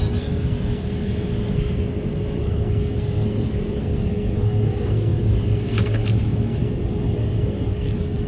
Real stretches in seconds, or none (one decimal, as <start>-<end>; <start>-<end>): none